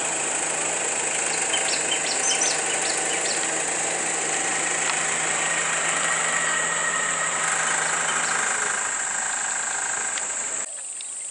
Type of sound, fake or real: real